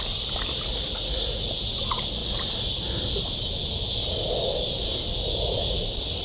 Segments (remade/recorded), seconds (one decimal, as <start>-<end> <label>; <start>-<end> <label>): 0.0-0.7 recorded; 0.7-1.5 remade; 1.5-6.2 recorded